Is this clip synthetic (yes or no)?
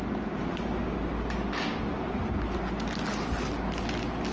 no